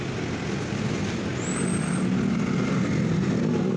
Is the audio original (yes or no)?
yes